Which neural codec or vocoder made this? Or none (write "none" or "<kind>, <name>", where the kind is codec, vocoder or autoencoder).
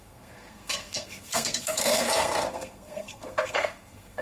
codec, SNAC